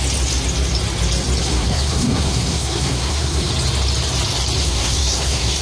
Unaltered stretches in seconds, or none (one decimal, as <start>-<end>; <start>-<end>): 0.0-1.4; 3.5-4.6